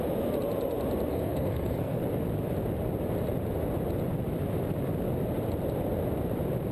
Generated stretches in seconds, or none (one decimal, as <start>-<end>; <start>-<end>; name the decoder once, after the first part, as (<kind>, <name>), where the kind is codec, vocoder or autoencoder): 1.1-2.0 (codec, SNAC)

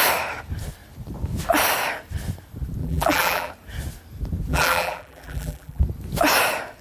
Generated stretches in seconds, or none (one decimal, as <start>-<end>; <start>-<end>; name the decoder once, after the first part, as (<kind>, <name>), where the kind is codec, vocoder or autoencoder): 2.8-3.5 (vocoder, BigVGAN v2); 4.5-5.8

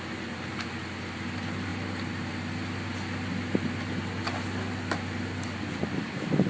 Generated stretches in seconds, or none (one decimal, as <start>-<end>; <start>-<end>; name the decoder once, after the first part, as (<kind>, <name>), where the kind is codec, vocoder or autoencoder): none

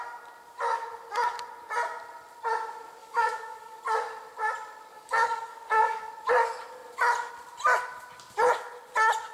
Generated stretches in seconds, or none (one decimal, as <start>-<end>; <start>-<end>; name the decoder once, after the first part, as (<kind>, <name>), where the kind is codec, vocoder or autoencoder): 3.0-3.8 (codec, DAC); 4.9-6.1